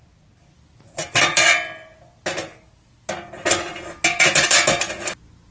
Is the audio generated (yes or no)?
no